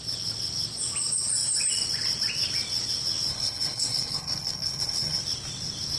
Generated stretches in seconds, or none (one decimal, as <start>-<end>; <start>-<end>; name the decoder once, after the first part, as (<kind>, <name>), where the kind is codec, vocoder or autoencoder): 3.3-5.2 (codec, HILCodec)